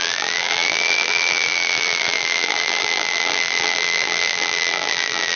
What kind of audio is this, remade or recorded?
remade